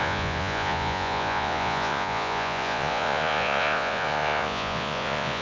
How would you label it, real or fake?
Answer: fake